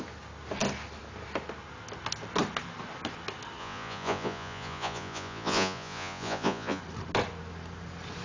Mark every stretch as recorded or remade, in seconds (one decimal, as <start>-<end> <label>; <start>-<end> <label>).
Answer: 0.0-3.6 recorded; 3.6-6.8 remade; 6.8-8.2 recorded